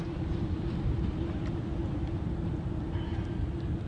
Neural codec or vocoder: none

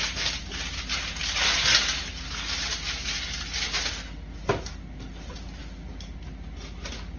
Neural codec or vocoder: none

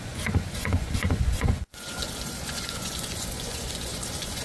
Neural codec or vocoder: vocoder, Vocos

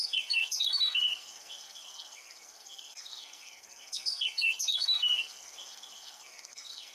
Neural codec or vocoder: codec, SNAC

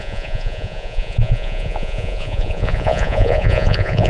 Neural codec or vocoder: vocoder, Vocos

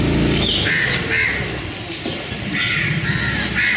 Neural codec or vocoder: none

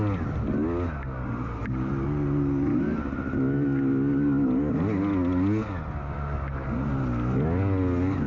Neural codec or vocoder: none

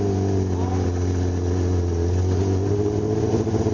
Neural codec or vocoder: none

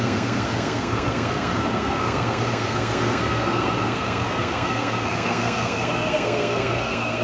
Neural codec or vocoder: codec, SNAC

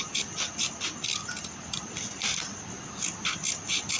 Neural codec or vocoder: none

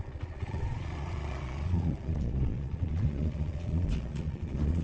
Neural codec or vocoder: vocoder, Vocos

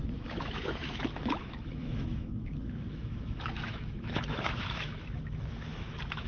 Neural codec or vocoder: autoencoder, DAC-VAE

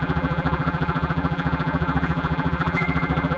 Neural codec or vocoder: vocoder, BigVGAN v2